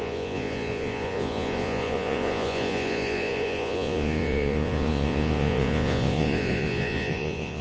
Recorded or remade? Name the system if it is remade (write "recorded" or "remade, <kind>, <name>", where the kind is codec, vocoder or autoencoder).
remade, vocoder, Vocos